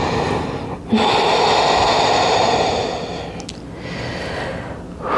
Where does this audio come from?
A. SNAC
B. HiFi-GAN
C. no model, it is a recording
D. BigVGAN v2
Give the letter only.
C